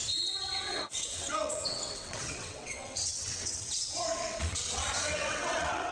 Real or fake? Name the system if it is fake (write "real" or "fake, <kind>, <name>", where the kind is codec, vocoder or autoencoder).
fake, vocoder, WaveNeXt